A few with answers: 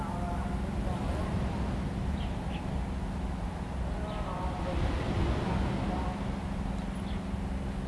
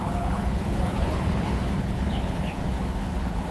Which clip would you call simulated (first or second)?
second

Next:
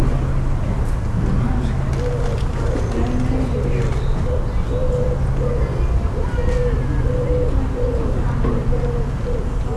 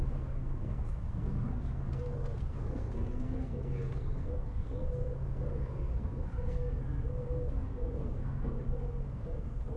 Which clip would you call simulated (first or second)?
second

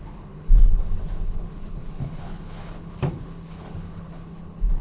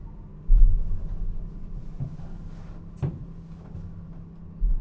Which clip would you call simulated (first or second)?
first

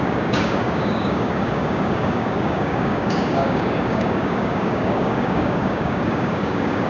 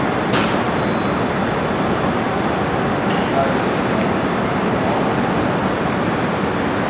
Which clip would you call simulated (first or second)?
first